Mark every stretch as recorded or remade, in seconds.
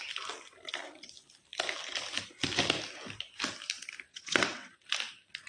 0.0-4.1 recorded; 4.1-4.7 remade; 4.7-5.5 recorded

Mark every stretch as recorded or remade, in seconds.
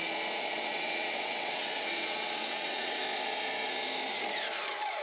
0.0-0.5 recorded; 0.5-3.0 remade; 3.0-5.0 recorded